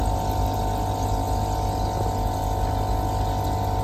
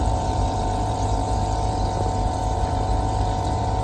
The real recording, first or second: first